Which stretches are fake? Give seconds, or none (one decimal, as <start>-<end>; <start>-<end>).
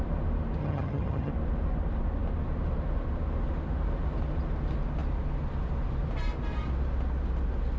0.6-1.3